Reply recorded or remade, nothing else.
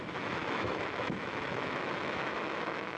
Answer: remade